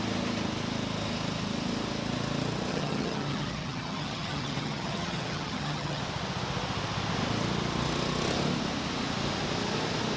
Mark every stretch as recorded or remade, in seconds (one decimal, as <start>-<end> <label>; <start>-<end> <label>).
0.0-2.7 recorded; 2.7-6.0 remade; 6.0-10.2 recorded